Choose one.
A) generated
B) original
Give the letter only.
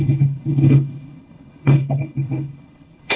A